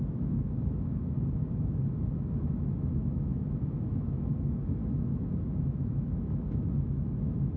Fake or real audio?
fake